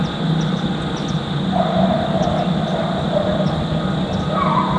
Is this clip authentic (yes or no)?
yes